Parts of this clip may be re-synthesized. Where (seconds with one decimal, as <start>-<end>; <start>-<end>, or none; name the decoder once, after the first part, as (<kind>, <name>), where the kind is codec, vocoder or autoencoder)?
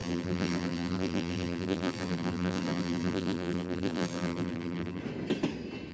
0.0-5.0 (vocoder, BigVGAN v2)